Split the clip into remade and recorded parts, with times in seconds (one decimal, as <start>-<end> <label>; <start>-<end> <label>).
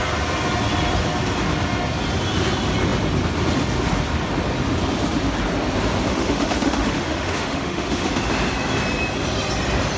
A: 0.0-6.1 recorded; 6.1-8.1 remade; 8.1-10.0 recorded